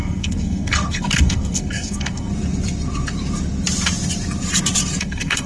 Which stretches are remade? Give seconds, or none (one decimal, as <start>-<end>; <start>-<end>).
0.0-2.3; 5.0-5.5